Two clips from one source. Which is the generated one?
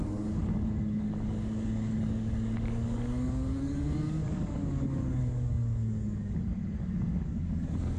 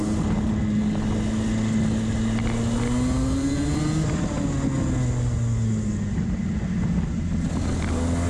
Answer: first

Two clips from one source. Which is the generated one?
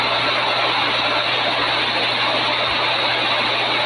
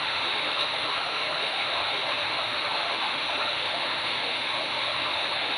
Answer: second